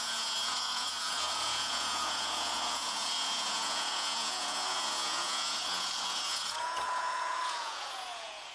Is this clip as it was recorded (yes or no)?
no